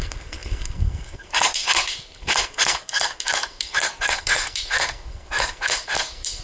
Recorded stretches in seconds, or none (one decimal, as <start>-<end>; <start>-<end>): none